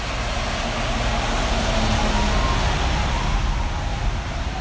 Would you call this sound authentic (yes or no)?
yes